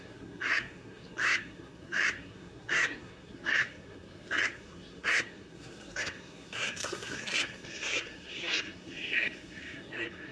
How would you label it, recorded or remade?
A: remade